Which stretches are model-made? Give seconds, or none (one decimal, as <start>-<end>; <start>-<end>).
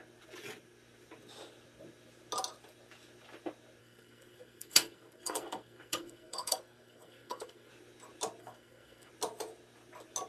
3.8-7.7; 8.4-9.1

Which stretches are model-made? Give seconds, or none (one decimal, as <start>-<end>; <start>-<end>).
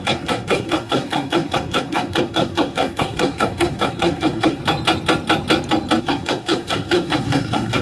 0.0-4.6; 6.0-7.8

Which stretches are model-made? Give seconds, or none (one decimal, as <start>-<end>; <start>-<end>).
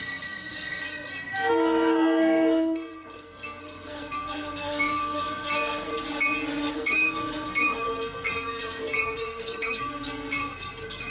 0.0-5.9; 6.7-11.1